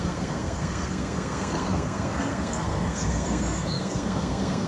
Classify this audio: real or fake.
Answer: fake